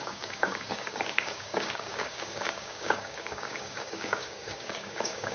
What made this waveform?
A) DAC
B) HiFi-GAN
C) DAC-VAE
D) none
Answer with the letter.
A